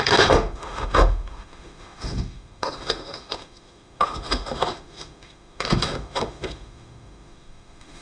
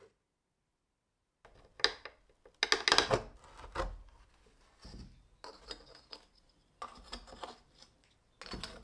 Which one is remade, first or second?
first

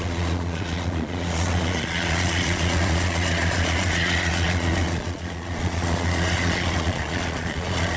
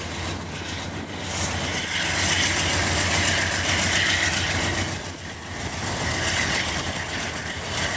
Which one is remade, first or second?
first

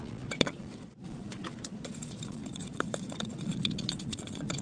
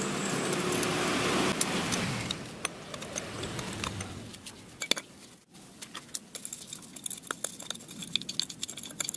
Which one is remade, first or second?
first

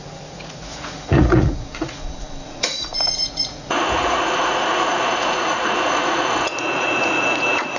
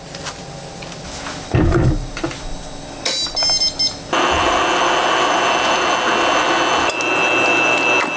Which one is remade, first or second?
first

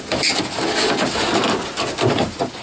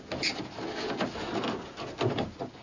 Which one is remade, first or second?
first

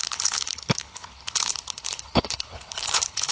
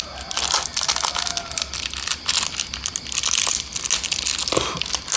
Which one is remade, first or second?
first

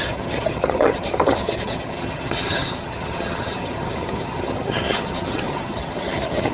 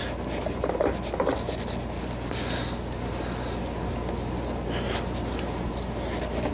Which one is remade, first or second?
first